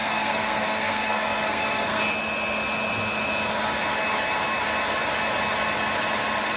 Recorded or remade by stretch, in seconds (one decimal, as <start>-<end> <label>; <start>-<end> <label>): 0.0-2.0 remade; 2.0-6.6 recorded